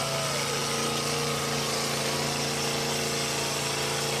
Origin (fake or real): real